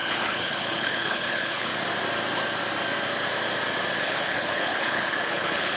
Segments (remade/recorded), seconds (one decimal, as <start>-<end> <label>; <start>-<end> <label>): 0.0-1.7 remade; 1.7-4.0 recorded; 4.0-5.8 remade